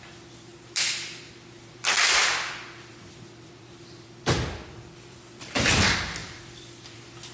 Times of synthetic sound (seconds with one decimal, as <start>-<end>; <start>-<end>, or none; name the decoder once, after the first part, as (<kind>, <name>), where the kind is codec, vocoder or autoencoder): 0.0-0.5 (vocoder, BigVGAN v2); 1.5-2.2; 2.9-7.3